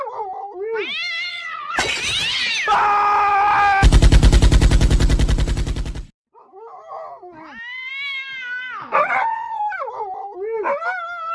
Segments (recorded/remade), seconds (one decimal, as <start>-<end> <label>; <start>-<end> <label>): 0.0-1.3 recorded; 1.3-2.0 remade; 2.0-8.8 recorded; 8.8-9.6 remade; 9.6-11.3 recorded